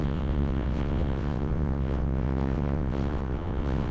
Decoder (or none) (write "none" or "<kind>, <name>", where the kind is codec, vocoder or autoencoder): vocoder, WaveNeXt